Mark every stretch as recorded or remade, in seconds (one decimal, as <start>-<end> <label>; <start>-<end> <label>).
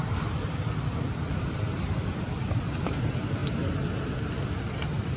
0.0-3.4 remade; 3.4-4.3 recorded; 4.3-5.2 remade